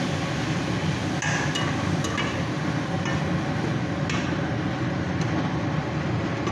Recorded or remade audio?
recorded